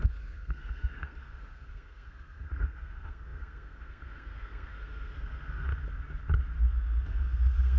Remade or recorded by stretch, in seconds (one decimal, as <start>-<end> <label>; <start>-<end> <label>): 0.0-5.7 remade; 5.7-6.6 recorded; 6.6-7.8 remade